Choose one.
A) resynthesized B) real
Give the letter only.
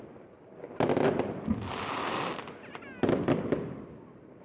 B